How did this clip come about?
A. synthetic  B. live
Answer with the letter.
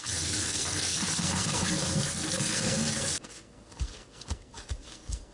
A